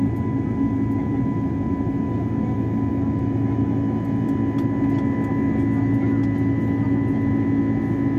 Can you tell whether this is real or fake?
real